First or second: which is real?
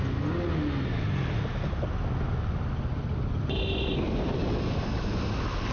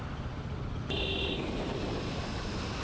first